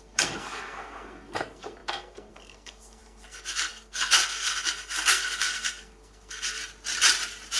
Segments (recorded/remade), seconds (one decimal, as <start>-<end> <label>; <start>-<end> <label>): 0.0-6.6 remade; 6.6-7.6 recorded